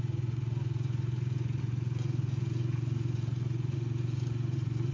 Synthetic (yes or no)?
yes